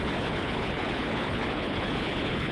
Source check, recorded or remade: remade